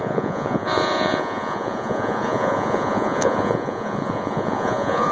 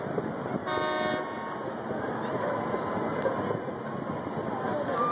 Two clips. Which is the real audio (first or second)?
second